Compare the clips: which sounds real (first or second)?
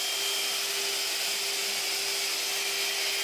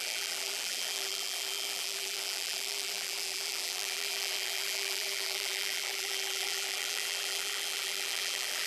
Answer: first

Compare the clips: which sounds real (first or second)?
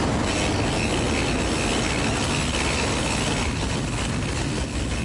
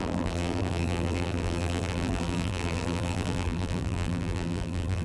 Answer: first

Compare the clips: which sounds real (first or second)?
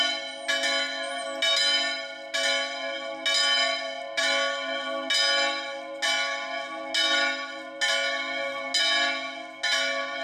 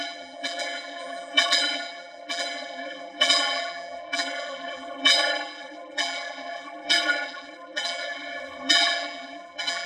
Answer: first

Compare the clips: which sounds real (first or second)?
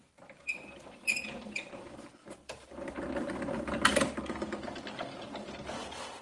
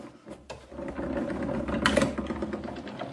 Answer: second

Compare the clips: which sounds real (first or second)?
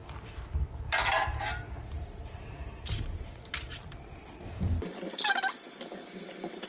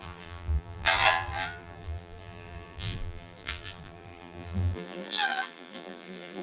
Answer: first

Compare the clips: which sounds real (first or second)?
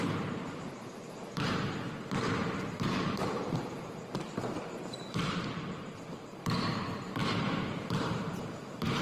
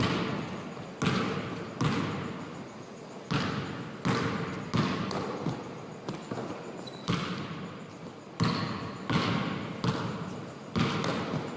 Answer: second